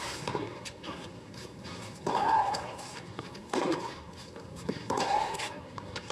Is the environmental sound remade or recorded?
remade